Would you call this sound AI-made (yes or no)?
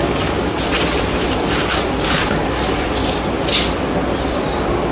no